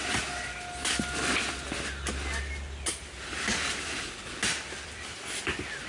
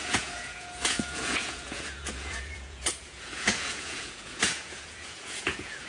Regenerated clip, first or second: second